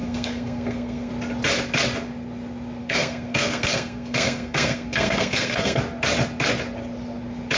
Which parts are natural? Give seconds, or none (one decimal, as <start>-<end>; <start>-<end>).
1.1-2.8; 5.8-7.6